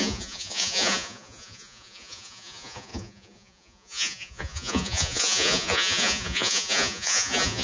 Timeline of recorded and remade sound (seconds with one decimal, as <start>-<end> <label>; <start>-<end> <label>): 0.0-7.6 remade